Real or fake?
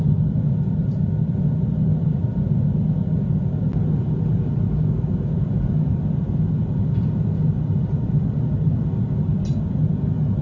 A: real